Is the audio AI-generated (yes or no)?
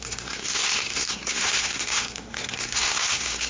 yes